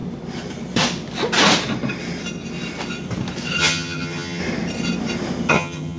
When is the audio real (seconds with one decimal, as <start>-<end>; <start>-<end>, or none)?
0.0-3.6; 4.4-5.5